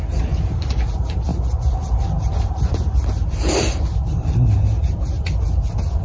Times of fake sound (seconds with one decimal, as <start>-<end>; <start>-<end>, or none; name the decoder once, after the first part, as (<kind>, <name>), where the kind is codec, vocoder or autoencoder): none